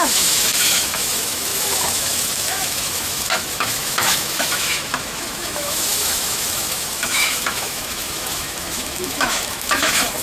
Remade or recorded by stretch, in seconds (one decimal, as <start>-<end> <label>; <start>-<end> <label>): 0.0-10.2 remade

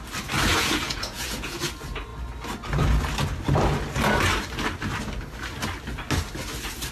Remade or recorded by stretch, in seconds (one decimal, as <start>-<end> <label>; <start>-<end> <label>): 0.0-0.5 recorded; 0.5-1.6 remade; 1.6-6.9 recorded

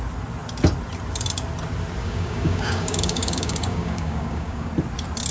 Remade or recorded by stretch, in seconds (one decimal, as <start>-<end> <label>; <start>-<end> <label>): 0.0-2.0 recorded; 2.0-4.7 remade; 4.7-5.3 recorded